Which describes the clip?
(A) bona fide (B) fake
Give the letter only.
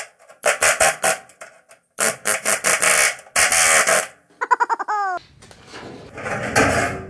A